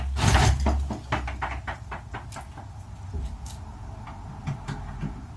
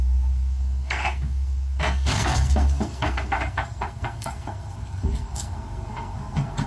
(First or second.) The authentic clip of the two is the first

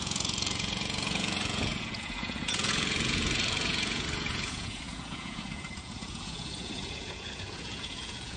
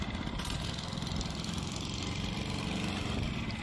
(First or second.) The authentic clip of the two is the second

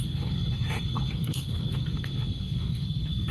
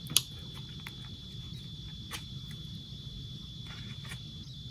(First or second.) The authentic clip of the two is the second